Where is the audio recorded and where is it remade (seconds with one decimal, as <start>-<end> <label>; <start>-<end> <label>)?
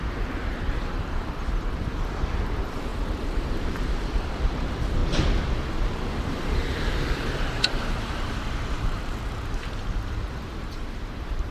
0.0-5.0 remade; 5.0-6.3 recorded; 6.3-11.5 remade